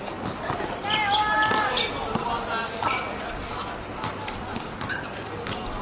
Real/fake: real